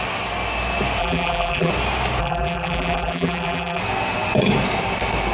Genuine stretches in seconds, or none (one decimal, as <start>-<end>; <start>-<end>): 0.0-1.0; 1.7-2.2; 3.8-5.3